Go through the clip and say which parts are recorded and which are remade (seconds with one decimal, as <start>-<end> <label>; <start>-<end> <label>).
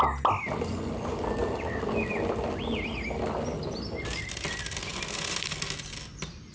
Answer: 0.0-1.4 recorded; 1.4-2.9 remade; 2.9-6.5 recorded